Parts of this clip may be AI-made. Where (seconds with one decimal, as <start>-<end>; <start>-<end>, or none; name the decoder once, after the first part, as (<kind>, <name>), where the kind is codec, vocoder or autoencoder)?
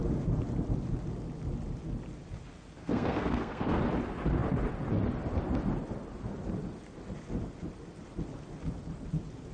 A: 2.8-3.8 (codec, SNAC)